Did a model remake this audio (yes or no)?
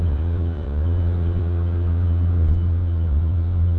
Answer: yes